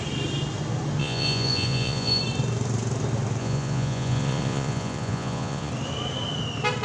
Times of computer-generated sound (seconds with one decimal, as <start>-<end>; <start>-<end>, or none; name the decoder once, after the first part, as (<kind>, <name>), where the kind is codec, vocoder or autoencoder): 1.0-2.2 (vocoder, Vocos); 3.4-5.7